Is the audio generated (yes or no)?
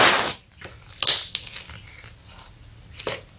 no